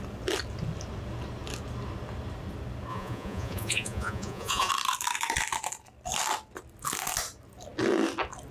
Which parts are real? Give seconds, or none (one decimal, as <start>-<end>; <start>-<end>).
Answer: 0.0-2.9; 4.7-8.5